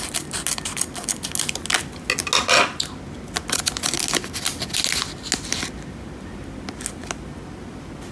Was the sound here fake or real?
real